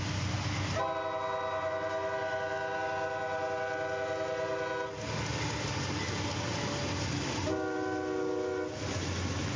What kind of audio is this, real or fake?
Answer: real